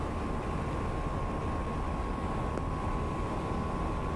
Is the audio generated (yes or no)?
no